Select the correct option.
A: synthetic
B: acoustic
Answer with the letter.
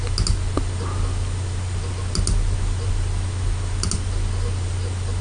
B